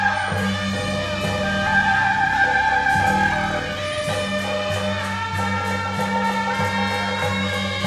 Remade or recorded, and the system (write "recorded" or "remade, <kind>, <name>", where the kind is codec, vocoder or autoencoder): recorded